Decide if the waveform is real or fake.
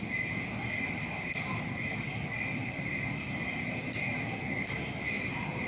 real